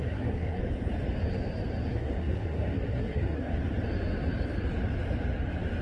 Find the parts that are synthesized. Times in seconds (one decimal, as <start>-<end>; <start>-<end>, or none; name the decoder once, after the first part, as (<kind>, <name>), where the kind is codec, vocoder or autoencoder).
0.0-0.6 (codec, SNAC); 1.9-3.5